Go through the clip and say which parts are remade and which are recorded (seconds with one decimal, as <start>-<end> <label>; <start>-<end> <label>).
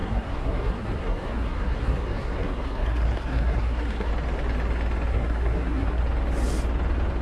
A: 0.0-4.1 remade; 4.1-5.1 recorded; 5.1-6.0 remade; 6.0-7.2 recorded